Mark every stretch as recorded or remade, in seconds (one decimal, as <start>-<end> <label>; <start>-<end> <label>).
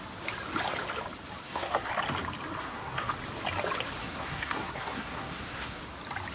0.0-1.4 recorded; 1.4-1.9 remade; 1.9-2.6 recorded; 2.6-3.1 remade; 3.1-4.0 recorded; 4.0-5.8 remade; 5.8-6.3 recorded